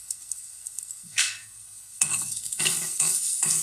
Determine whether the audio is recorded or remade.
remade